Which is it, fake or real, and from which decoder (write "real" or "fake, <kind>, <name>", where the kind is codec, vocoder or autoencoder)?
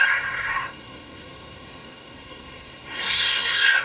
fake, codec, SNAC